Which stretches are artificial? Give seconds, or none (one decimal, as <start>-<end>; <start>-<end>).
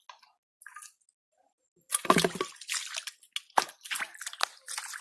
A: none